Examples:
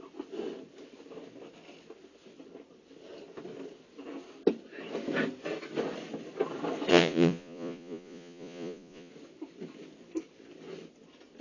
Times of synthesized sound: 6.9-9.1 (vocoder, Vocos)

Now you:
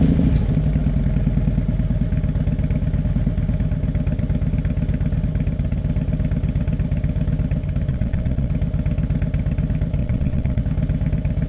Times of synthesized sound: 7.9-8.5 (vocoder, Vocos); 10.0-10.6

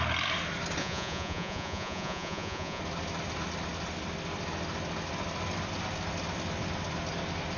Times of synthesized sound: 0.8-2.8 (vocoder, Vocos)